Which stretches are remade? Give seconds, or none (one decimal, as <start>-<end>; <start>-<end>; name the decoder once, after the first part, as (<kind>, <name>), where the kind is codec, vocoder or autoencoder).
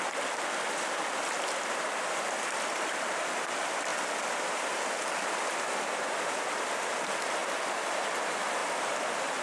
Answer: 7.4-8.1 (vocoder, BigVGAN v2); 8.6-9.4